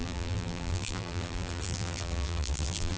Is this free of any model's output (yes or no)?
no